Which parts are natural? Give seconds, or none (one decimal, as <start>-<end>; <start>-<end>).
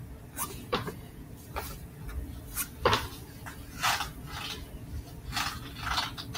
0.0-0.4; 1.3-6.4